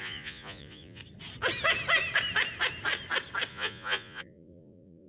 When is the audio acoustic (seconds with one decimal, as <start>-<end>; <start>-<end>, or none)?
1.0-3.5